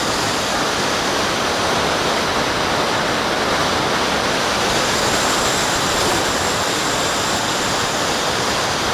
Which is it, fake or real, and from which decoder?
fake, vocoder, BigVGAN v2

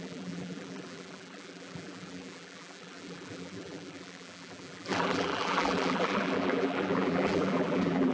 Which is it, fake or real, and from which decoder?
fake, vocoder, BigVGAN v2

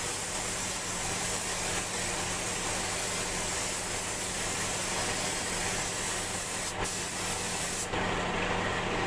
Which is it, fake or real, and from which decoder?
real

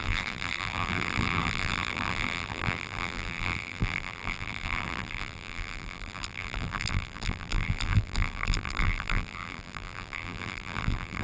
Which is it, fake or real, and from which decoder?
fake, vocoder, BigVGAN v2